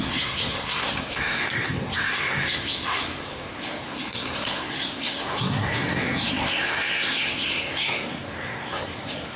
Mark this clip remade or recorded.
remade